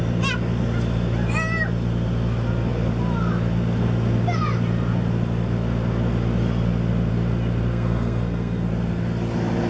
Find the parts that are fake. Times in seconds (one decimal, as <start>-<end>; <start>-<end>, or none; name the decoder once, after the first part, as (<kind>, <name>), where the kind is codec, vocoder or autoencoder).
7.7-8.7 (codec, SNAC)